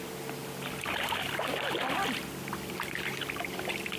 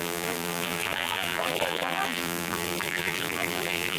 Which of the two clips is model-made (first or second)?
second